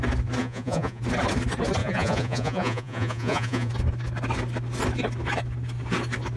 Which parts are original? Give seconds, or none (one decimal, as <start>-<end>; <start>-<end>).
0.0-0.4; 1.0-1.8; 3.7-6.4

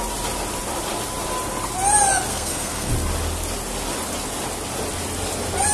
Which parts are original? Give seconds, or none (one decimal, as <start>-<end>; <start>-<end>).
0.0-2.3; 2.9-5.7

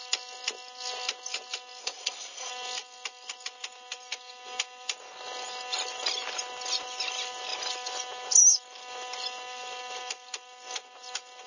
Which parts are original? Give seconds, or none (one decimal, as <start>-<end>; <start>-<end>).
0.0-1.8; 2.5-11.5

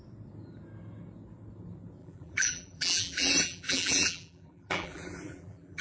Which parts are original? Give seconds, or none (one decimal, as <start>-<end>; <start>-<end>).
0.0-2.0

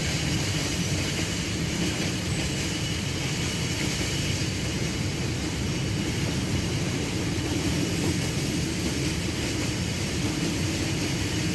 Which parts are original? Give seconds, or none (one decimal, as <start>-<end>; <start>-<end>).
2.2-6.5; 7.4-11.5

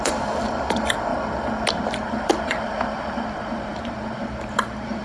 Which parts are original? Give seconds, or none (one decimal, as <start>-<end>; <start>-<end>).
1.1-1.7

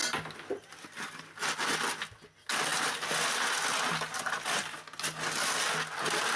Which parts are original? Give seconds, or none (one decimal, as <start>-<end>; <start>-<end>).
0.0-6.4